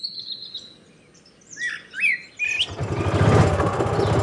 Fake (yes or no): no